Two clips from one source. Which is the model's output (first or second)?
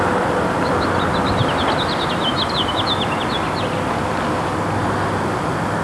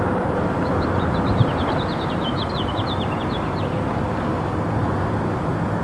second